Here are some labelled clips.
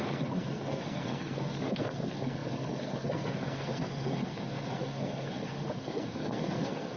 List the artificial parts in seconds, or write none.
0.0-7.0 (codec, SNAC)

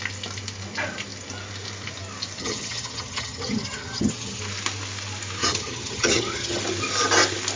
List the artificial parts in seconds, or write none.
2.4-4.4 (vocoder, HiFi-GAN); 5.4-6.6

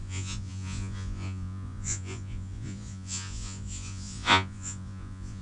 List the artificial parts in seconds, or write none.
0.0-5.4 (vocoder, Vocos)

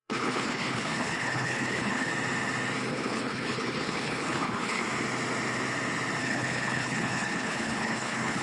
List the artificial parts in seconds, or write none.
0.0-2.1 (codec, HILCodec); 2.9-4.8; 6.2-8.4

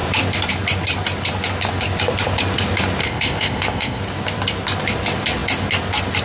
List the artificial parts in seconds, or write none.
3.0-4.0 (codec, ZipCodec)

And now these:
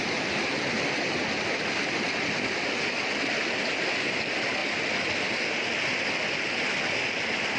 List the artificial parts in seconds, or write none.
none

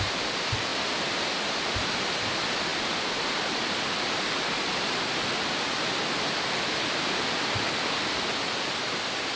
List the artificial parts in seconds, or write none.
none